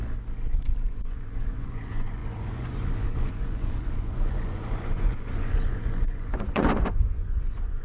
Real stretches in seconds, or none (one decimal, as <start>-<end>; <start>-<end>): 0.0-0.9